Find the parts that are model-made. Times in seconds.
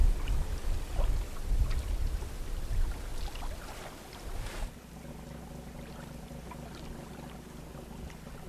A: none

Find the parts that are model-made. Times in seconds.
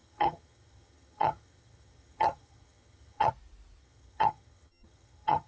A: 0.0-3.3; 3.8-5.5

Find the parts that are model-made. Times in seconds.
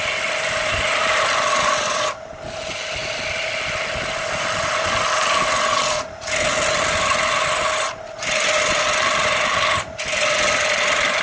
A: none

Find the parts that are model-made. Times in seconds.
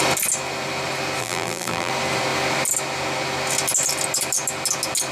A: 1.2-1.9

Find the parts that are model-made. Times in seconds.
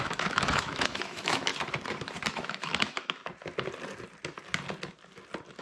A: 0.0-1.5; 2.3-3.2